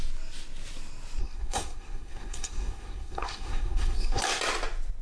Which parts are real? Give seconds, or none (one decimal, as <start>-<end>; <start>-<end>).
0.0-1.2; 4.2-5.0